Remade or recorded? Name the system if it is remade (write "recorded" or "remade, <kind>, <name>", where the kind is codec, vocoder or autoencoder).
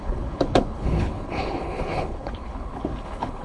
remade, codec, HILCodec